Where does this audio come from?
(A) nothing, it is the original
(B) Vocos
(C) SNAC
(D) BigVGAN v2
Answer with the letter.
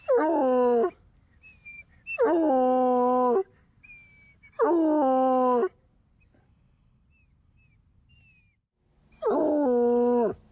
A